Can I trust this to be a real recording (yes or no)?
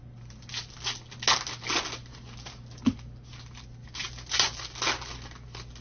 yes